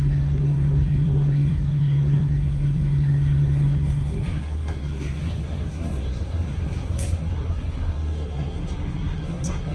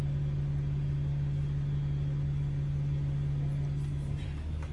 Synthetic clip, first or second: first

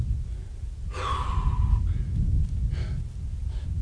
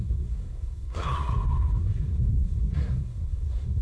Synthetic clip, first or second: second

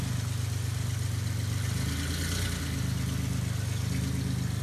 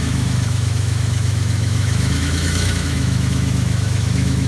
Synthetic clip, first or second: second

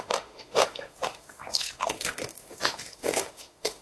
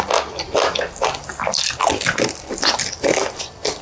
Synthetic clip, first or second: first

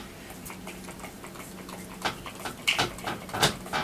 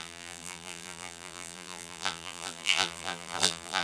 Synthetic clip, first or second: second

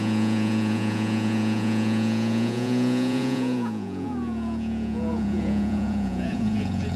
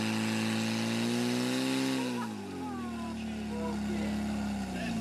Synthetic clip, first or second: first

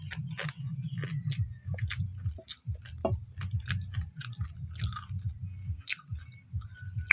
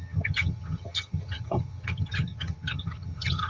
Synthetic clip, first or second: second